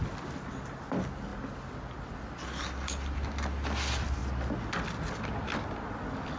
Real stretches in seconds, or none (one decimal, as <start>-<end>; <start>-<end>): 0.0-6.4